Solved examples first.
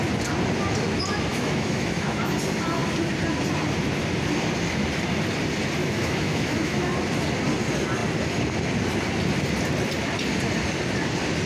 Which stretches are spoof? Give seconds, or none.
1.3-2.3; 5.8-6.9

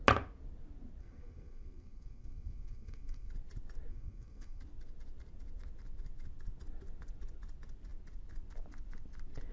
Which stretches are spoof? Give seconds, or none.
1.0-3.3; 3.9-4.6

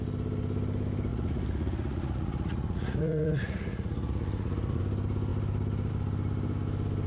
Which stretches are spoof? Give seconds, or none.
1.1-4.8

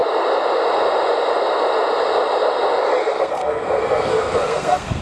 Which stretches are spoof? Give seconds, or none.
3.0-5.0

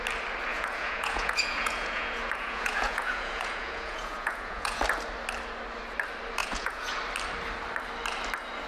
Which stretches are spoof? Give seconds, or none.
0.5-4.8; 6.4-6.9